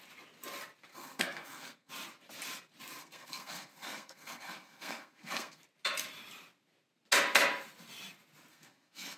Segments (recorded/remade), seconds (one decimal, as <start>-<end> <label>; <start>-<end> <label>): 0.0-0.9 recorded; 0.9-1.9 remade; 1.9-3.0 recorded; 3.0-5.6 remade; 5.6-8.5 recorded; 8.5-9.2 remade